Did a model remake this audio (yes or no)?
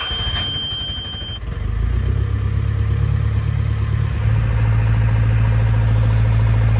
no